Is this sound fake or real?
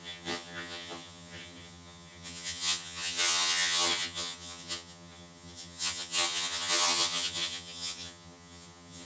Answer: fake